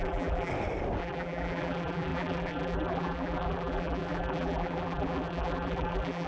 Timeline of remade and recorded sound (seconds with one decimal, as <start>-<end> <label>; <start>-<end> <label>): 0.0-0.5 remade; 0.5-1.0 recorded; 1.0-6.3 remade